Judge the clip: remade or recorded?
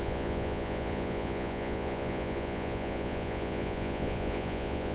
remade